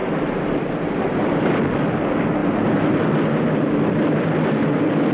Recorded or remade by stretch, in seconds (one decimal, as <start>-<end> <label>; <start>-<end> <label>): 0.0-5.1 recorded